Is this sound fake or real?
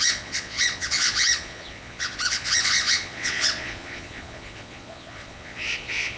fake